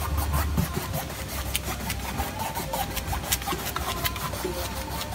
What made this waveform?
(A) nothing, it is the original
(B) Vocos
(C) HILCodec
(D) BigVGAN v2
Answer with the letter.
A